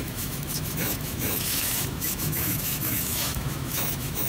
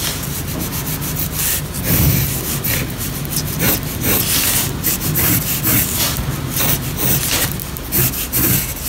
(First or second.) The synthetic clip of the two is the first